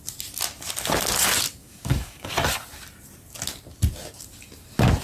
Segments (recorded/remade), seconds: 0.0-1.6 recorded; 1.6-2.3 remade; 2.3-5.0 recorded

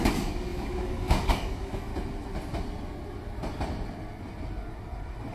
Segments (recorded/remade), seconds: 0.0-1.9 remade; 1.9-5.3 recorded